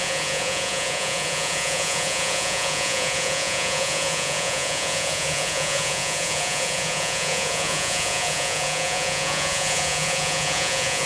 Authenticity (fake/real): fake